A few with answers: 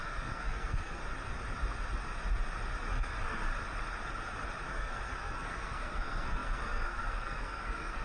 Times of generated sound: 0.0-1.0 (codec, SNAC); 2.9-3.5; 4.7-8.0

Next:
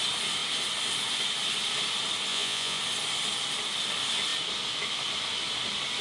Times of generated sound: 2.3-2.8 (vocoder, Vocos)

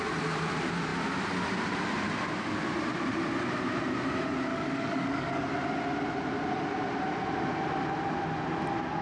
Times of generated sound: 4.5-5.4 (codec, DAC)